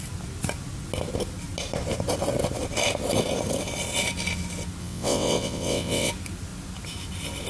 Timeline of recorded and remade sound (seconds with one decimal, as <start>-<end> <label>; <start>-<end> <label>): 0.0-4.8 recorded; 4.8-6.1 remade; 6.1-7.5 recorded